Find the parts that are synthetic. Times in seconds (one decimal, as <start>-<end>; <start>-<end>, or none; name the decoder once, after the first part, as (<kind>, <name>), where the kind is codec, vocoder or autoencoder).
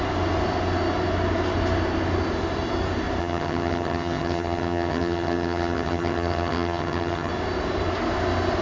3.2-7.3 (vocoder, HiFi-GAN)